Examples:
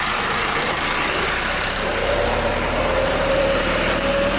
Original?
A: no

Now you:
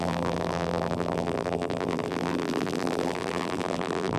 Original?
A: no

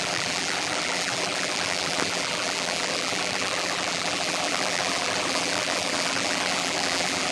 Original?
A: no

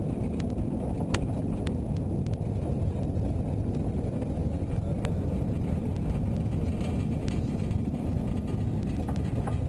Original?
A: yes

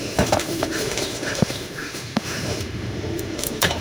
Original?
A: no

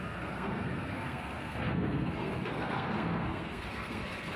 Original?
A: no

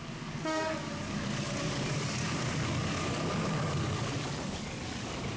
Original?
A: no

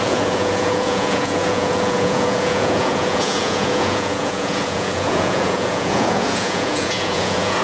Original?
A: no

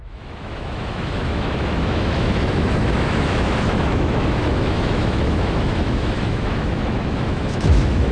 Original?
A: no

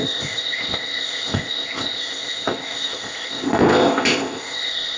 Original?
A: no